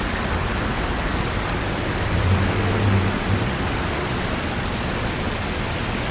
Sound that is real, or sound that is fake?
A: real